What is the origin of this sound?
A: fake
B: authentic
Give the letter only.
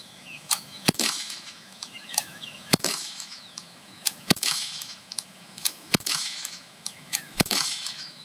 A